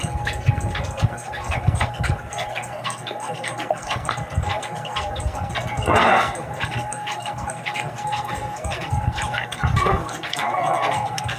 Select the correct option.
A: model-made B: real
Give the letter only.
A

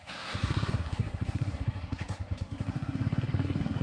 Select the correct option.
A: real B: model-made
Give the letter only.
B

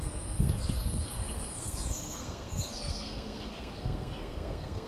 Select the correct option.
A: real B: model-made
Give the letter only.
B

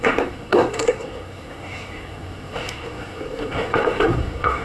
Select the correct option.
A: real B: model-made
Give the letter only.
B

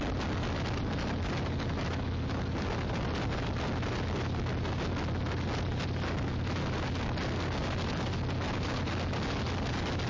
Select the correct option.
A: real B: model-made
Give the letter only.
A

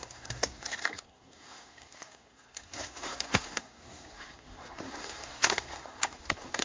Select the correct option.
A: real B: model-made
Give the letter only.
B